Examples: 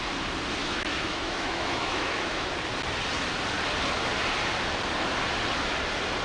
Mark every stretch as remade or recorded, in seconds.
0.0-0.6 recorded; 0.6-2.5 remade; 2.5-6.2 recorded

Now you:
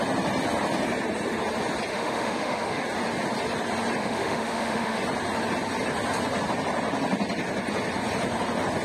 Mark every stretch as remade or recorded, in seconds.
0.0-1.9 recorded; 1.9-2.8 remade; 2.8-4.0 recorded; 4.0-5.0 remade; 5.0-8.8 recorded

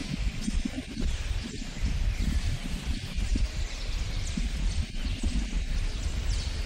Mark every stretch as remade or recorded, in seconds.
0.0-6.7 recorded